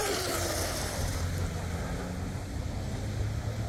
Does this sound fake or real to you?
real